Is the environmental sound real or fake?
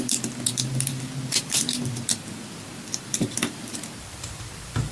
fake